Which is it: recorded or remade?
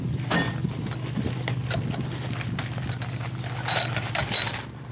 recorded